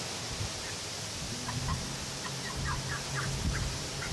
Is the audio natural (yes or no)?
yes